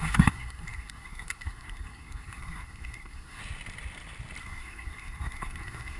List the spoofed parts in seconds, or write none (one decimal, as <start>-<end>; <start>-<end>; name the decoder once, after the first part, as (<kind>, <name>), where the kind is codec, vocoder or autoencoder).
0.0-3.4 (codec, SNAC); 4.4-6.0